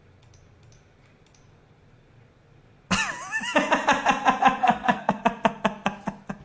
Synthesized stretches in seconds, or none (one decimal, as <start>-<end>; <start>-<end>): 4.6-5.2